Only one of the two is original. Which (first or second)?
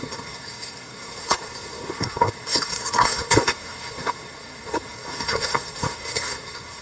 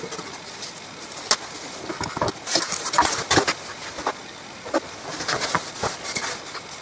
second